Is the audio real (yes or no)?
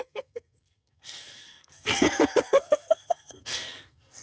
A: no